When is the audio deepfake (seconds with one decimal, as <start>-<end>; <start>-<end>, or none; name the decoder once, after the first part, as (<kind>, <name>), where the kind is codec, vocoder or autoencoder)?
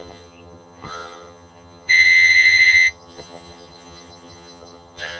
0.0-5.2 (vocoder, HiFi-GAN)